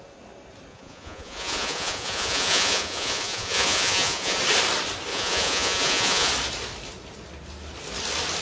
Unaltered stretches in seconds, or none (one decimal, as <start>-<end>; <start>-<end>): 0.0-0.7; 4.4-5.1; 6.3-8.4